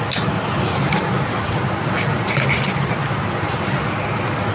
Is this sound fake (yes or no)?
no